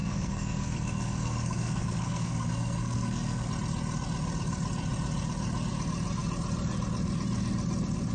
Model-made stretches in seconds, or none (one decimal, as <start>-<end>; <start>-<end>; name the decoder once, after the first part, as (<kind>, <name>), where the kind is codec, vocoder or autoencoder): 0.0-3.5 (codec, SNAC)